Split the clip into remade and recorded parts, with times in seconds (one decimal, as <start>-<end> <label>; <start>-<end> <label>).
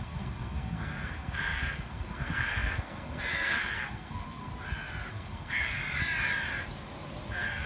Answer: 0.0-4.5 remade; 4.5-5.1 recorded; 5.1-5.8 remade; 5.8-7.3 recorded; 7.3-7.7 remade